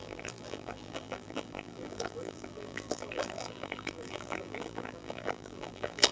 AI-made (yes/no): yes